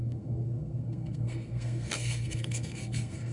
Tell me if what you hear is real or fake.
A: fake